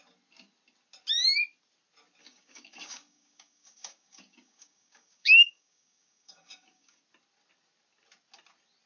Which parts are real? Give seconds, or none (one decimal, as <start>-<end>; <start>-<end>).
0.0-2.2; 7.0-8.9